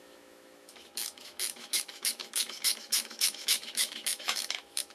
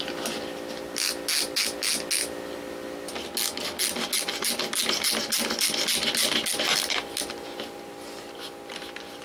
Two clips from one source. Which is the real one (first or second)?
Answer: second